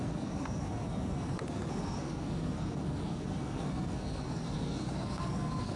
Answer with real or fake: fake